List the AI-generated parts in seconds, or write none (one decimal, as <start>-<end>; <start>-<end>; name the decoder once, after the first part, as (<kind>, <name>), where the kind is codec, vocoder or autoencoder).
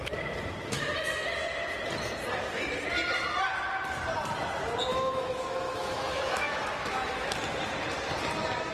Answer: 4.9-7.3 (autoencoder, DAC-VAE)